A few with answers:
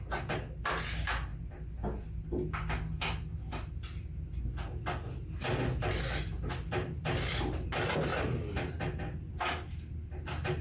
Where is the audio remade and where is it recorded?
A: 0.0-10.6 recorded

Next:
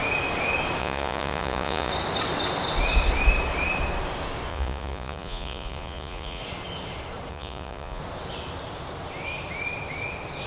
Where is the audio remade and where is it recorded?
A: 0.0-0.8 recorded; 0.8-1.9 remade; 1.9-4.5 recorded; 4.5-6.4 remade; 6.4-7.3 recorded; 7.3-8.0 remade; 8.0-10.5 recorded

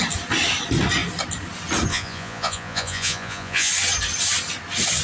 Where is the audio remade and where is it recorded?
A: 0.0-1.9 recorded; 1.9-3.7 remade; 3.7-5.0 recorded

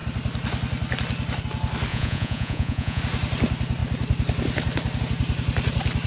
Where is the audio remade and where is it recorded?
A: 0.0-1.9 recorded; 1.9-3.0 remade; 3.0-6.1 recorded